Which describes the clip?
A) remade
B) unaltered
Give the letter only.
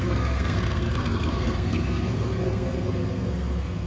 A